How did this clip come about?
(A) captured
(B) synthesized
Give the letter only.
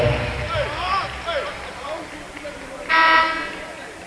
A